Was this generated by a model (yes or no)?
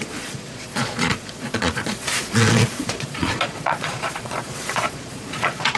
yes